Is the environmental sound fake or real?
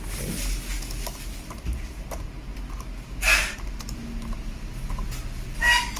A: real